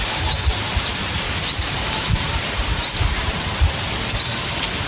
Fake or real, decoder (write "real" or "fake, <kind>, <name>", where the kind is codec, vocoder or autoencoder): fake, vocoder, BigVGAN v2